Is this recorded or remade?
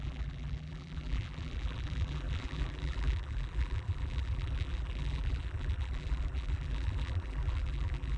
remade